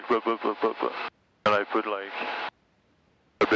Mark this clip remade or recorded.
recorded